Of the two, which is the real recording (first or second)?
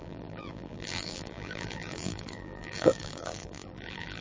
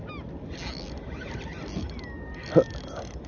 second